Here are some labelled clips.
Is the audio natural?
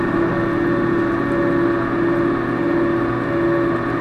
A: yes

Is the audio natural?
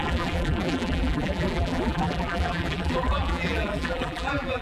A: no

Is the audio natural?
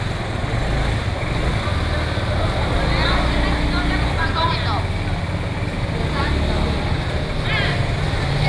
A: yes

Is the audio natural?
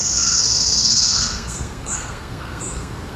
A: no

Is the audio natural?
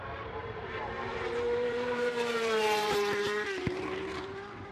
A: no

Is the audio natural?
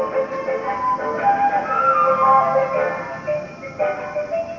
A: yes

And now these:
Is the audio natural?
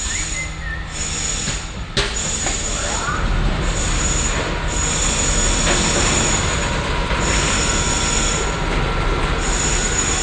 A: yes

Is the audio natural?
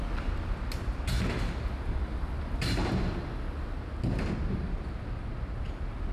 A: yes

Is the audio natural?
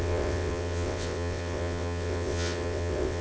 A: no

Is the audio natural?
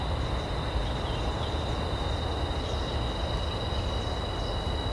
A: yes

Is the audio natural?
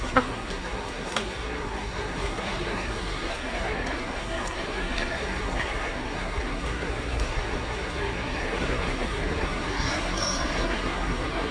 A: no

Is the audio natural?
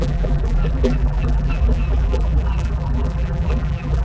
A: no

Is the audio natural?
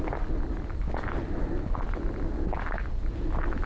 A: yes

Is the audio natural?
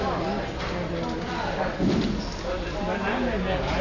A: yes